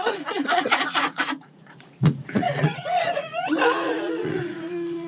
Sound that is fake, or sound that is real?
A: fake